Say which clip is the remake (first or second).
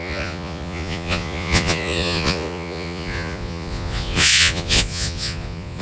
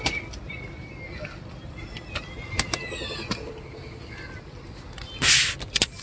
first